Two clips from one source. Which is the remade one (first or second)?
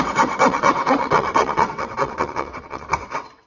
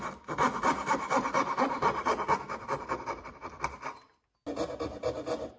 first